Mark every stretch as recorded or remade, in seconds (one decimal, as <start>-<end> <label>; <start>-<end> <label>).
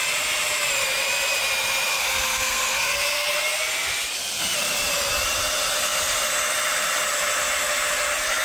0.0-1.9 recorded; 1.9-3.3 remade; 3.3-8.4 recorded